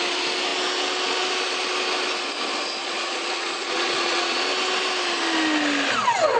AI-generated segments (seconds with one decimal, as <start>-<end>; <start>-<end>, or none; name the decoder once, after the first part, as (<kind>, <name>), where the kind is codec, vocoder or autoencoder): 2.8-4.4 (vocoder, Vocos)